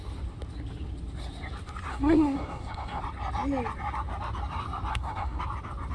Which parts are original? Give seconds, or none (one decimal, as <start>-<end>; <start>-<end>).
0.0-1.9; 3.0-4.9; 5.4-5.9